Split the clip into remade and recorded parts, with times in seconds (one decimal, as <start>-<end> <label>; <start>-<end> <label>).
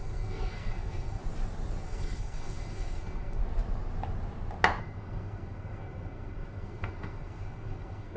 0.0-1.2 remade; 1.2-1.8 recorded; 1.8-3.4 remade; 3.4-4.8 recorded; 4.8-8.2 remade